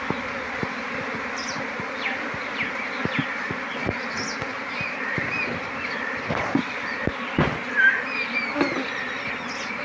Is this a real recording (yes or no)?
yes